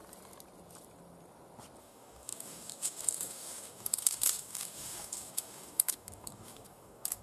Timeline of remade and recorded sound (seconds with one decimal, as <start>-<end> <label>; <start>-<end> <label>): 0.0-1.8 recorded; 1.8-7.2 remade